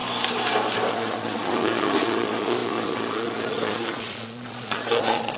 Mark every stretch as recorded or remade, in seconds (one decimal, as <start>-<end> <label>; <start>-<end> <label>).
0.0-0.9 recorded; 0.9-5.4 remade